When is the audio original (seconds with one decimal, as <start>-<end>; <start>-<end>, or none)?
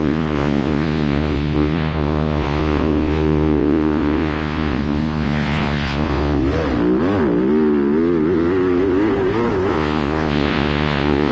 6.4-9.7